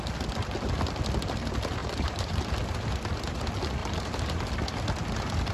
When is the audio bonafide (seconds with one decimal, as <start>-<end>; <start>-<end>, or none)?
0.0-1.8; 2.4-3.8; 4.5-5.5